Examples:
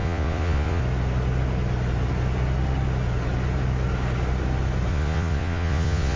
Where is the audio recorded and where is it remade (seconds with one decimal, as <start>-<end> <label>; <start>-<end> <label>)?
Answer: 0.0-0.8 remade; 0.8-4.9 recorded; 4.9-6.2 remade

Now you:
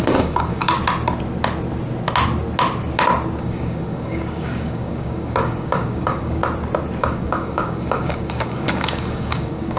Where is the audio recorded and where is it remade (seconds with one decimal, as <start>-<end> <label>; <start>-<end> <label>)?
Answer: 0.0-0.8 remade; 0.8-3.4 recorded; 3.4-6.4 remade; 6.4-7.0 recorded; 7.0-9.8 remade

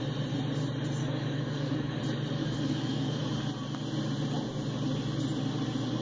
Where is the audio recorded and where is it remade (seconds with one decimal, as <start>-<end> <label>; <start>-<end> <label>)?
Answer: 0.0-1.0 recorded; 1.0-2.0 remade; 2.0-2.4 recorded; 2.4-3.2 remade; 3.2-6.0 recorded

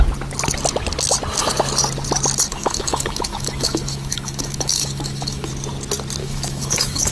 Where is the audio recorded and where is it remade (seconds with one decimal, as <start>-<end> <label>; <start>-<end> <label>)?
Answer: 0.0-2.5 recorded; 2.5-5.5 remade; 5.5-6.2 recorded; 6.2-7.1 remade

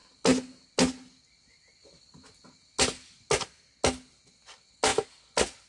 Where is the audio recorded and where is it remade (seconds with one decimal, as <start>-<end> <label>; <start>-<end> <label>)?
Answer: 0.0-5.7 recorded

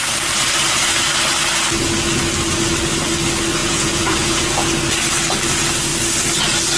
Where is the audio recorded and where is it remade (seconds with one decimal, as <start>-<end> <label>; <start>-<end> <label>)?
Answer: 0.0-3.6 recorded; 3.6-4.7 remade; 4.7-6.8 recorded

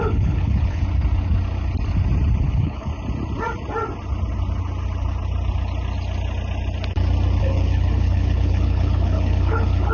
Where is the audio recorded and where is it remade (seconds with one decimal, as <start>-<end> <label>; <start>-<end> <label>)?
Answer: 0.0-0.8 remade; 0.8-2.4 recorded; 2.4-2.9 remade; 2.9-7.4 recorded; 7.4-9.9 remade

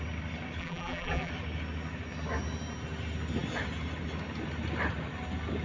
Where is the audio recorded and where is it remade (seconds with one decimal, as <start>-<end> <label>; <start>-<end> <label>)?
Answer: 0.0-0.6 recorded; 0.6-1.3 remade; 1.3-5.6 recorded